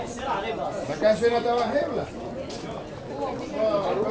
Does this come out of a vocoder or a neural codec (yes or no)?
no